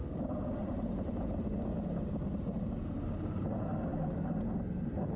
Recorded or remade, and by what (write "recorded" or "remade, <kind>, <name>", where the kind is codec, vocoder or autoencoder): recorded